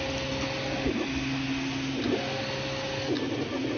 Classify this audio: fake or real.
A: real